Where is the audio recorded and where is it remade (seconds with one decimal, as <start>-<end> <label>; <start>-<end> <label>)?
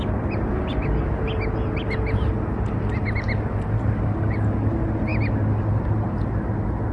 0.0-6.9 recorded